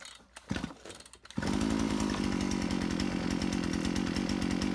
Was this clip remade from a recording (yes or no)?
no